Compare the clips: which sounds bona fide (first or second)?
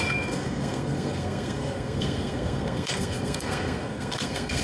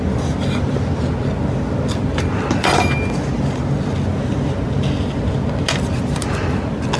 second